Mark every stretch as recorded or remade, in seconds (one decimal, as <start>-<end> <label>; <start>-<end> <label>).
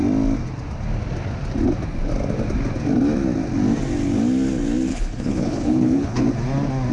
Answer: 0.0-4.9 recorded; 4.9-6.2 remade; 6.2-6.9 recorded